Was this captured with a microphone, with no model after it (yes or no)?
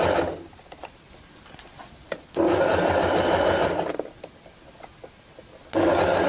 yes